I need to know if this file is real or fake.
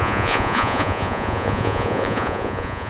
fake